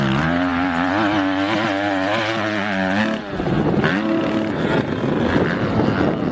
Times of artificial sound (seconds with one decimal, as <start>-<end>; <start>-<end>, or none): none